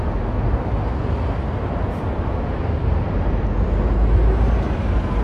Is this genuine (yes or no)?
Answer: yes